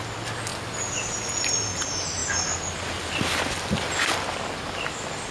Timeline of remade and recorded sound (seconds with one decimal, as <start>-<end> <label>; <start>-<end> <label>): 0.0-5.3 recorded